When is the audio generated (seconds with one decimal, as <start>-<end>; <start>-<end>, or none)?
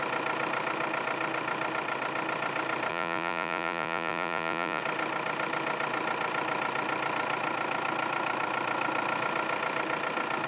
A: 2.9-4.8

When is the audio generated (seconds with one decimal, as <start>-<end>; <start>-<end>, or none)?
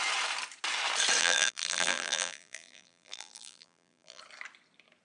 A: 1.2-4.2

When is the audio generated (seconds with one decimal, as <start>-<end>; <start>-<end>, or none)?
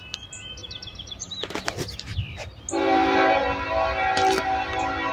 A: 0.6-1.3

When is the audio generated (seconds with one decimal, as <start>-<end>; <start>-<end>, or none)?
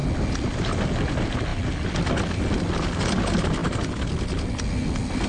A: none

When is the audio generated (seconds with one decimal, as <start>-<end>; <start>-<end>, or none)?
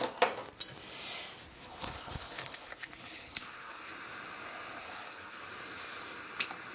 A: 1.5-3.9; 4.8-5.4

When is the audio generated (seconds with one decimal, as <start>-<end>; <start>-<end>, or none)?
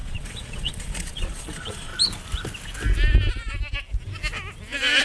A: 0.0-1.9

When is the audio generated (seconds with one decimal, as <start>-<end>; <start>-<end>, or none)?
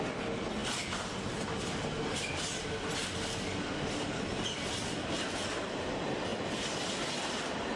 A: none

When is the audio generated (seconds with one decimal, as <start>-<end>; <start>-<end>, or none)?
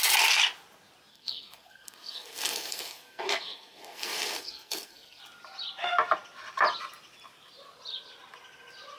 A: 1.1-5.2